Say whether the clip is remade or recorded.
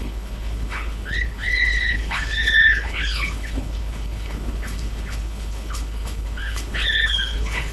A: remade